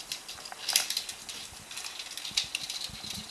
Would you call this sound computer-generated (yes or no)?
no